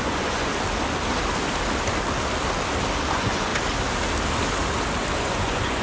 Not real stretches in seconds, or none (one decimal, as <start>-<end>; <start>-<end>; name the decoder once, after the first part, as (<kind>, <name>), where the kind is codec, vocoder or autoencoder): 0.0-0.5 (vocoder, Vocos); 3.1-3.5; 5.2-5.8